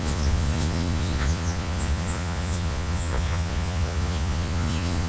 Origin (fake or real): fake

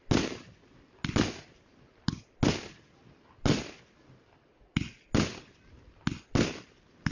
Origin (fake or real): real